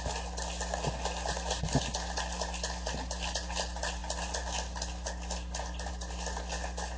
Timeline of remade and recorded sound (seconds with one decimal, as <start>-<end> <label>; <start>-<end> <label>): 0.0-7.0 recorded